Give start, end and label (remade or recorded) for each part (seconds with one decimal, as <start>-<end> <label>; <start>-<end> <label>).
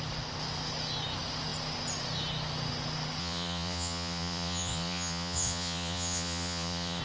0.0-3.2 recorded; 3.2-7.0 remade